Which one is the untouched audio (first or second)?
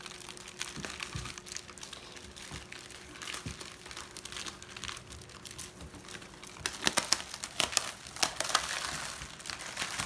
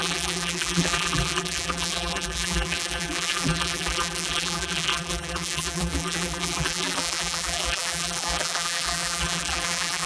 first